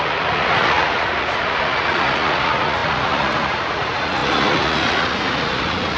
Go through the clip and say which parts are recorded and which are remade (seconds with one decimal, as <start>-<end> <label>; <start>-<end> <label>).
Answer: 0.0-6.0 remade